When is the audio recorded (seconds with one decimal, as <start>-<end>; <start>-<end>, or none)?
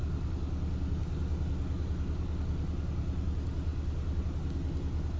0.0-5.2